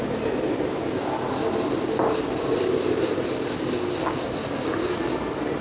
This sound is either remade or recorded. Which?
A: recorded